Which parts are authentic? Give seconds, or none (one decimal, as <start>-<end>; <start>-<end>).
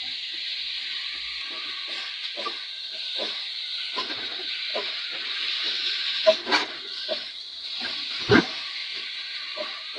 0.0-8.8